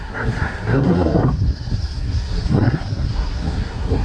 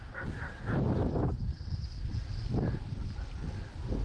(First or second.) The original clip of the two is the second